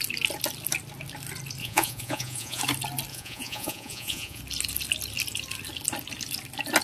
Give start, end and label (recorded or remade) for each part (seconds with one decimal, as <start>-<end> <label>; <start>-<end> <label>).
0.0-1.6 recorded; 1.6-2.6 remade; 2.6-3.1 recorded; 3.1-4.4 remade; 4.4-6.8 recorded